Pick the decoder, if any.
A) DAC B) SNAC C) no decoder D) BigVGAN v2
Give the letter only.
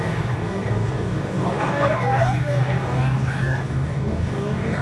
A